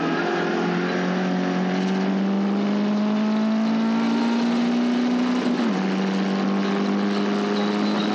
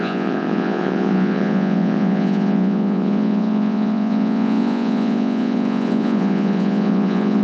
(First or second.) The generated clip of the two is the second